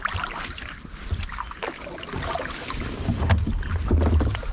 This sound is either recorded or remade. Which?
recorded